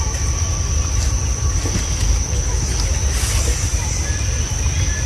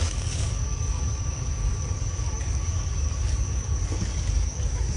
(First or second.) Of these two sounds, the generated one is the second